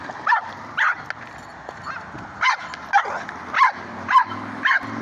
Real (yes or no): yes